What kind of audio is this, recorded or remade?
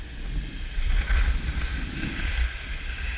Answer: recorded